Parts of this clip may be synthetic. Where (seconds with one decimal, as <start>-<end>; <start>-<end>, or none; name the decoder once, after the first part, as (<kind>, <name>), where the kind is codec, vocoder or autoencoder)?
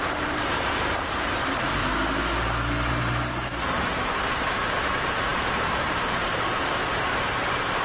0.0-1.8 (vocoder, BigVGAN v2); 2.9-7.8